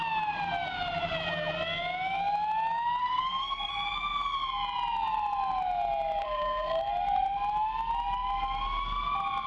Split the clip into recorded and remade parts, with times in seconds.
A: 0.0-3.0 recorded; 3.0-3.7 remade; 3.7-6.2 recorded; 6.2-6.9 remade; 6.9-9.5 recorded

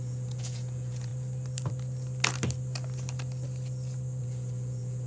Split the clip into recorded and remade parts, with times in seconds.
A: 0.0-1.1 remade; 1.1-4.2 recorded; 4.2-5.1 remade

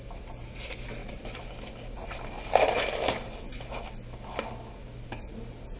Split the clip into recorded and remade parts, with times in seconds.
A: 0.0-5.8 recorded

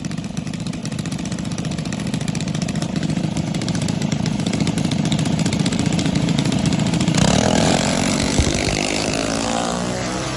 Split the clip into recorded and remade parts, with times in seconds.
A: 0.0-0.8 remade; 0.8-2.4 recorded; 2.4-9.2 remade; 9.2-10.0 recorded; 10.0-10.4 remade